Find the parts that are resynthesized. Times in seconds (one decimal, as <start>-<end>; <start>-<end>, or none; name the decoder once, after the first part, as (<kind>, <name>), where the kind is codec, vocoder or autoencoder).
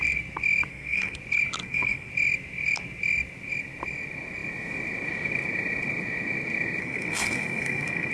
0.7-1.2 (codec, SNAC); 1.6-2.1; 6.8-8.1